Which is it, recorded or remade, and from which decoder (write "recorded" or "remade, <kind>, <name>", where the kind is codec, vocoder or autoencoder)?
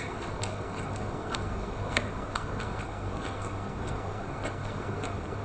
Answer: remade, codec, SNAC